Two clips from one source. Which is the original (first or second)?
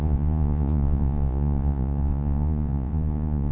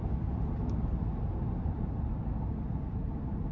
second